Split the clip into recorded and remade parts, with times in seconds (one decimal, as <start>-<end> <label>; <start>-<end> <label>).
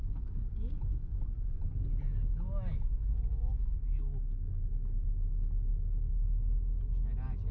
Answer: 0.0-7.5 recorded